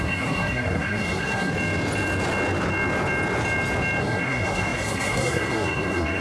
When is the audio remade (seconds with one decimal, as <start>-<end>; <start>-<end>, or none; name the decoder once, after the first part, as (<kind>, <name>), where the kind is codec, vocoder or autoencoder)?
0.0-1.5 (codec, SNAC); 4.0-6.2